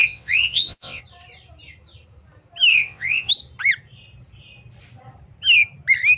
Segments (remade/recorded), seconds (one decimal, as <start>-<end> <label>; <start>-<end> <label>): 0.0-1.0 remade; 1.0-2.7 recorded; 2.7-3.3 remade; 3.3-6.2 recorded